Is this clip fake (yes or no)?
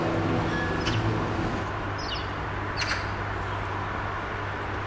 no